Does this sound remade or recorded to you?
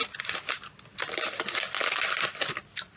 recorded